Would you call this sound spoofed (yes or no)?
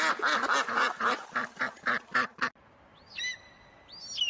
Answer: no